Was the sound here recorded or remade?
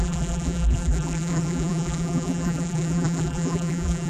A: remade